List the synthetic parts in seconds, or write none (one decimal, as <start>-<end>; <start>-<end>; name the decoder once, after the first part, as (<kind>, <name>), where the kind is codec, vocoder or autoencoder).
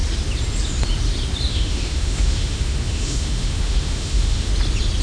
1.5-4.5 (autoencoder, DAC-VAE)